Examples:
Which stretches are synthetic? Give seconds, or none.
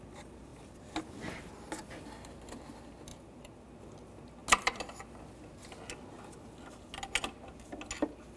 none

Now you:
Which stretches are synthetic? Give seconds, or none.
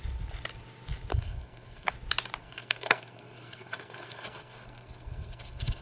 1.1-1.9 (codec, SNAC); 2.4-5.8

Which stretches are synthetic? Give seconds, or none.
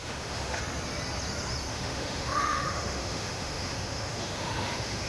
0.0-0.6 (autoencoder, DAC-VAE); 1.7-5.1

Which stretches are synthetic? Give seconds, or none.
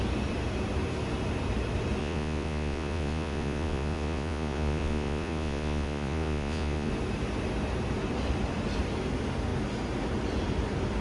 2.0-6.9 (vocoder, Vocos)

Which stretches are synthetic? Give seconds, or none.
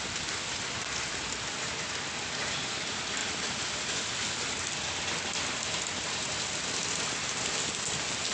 none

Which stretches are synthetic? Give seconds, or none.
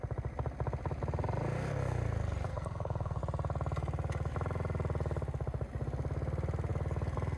2.5-3.2 (codec, SNAC)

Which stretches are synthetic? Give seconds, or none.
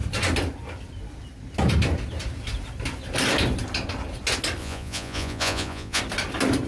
4.6-6.0 (vocoder, Vocos)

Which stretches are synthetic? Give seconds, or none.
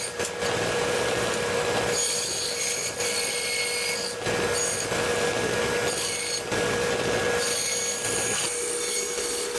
none